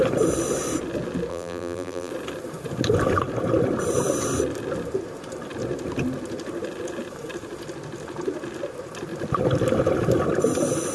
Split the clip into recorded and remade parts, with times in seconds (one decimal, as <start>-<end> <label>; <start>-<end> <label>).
0.0-1.3 recorded; 1.3-2.1 remade; 2.1-10.9 recorded